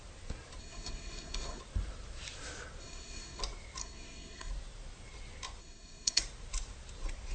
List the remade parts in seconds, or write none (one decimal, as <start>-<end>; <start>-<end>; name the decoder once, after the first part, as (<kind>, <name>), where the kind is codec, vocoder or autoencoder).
0.6-1.6 (codec, SNAC); 2.8-3.4; 3.8-4.5; 5.6-6.2